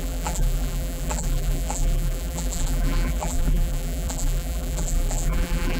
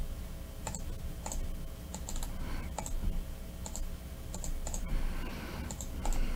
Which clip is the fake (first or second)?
first